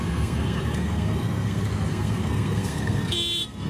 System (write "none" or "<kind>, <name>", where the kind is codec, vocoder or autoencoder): codec, SNAC